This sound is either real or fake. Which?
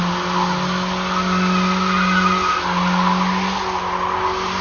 real